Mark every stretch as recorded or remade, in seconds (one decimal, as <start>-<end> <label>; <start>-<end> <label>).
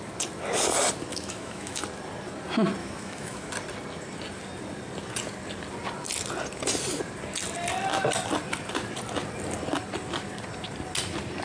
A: 0.0-1.1 recorded; 1.1-1.8 remade; 1.8-2.8 recorded; 2.8-3.5 remade; 3.5-11.4 recorded